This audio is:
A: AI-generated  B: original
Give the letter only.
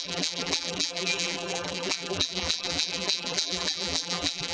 A